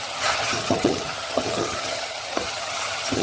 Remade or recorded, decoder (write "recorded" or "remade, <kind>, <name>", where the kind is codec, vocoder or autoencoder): remade, vocoder, HiFi-GAN